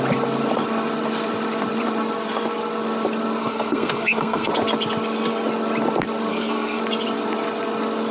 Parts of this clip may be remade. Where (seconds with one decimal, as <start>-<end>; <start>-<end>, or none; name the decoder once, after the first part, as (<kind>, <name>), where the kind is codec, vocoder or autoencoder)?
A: 3.4-4.5 (codec, SNAC); 6.3-6.8